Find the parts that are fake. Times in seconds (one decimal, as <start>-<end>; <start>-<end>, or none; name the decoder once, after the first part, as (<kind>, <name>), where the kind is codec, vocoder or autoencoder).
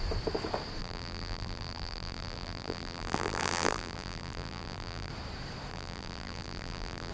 0.8-5.1 (vocoder, BigVGAN v2); 5.7-7.1